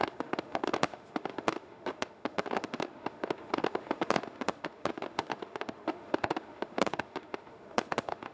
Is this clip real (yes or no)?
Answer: no